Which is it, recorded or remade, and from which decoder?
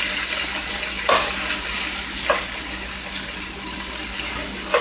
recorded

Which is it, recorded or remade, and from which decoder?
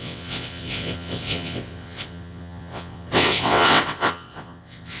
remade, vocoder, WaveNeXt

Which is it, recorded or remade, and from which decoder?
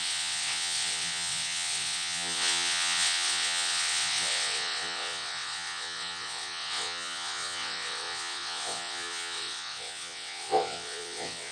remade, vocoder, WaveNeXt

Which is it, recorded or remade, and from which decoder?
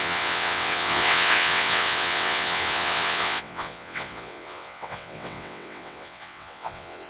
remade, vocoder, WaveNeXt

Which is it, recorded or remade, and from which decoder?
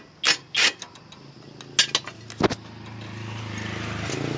recorded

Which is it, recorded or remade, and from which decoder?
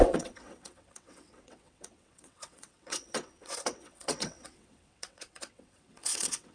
remade, vocoder, WaveNeXt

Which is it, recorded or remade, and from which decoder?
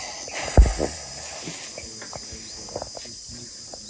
recorded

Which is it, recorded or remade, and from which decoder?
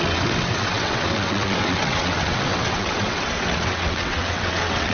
remade, vocoder, WaveNeXt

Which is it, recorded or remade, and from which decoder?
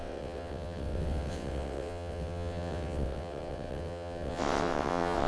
remade, vocoder, WaveNeXt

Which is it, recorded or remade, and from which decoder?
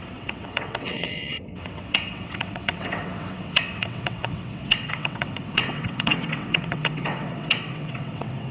remade, vocoder, WaveNeXt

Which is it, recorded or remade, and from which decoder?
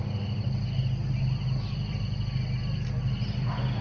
recorded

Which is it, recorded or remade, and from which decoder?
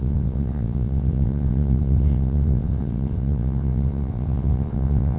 remade, vocoder, WaveNeXt